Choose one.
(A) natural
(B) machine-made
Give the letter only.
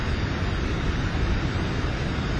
A